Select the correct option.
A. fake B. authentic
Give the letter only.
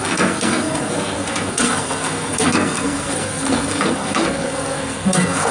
A